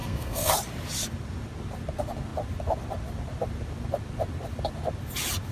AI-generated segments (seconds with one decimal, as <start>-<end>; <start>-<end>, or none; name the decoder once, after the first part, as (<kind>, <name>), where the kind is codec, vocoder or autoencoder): 0.0-0.5 (codec, SNAC)